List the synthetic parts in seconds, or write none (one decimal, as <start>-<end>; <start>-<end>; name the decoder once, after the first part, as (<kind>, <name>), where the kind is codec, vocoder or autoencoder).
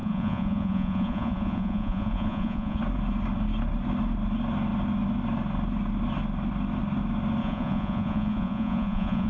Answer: 0.0-2.8 (vocoder, Vocos); 7.4-9.3